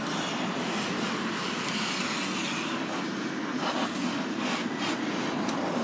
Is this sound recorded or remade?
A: recorded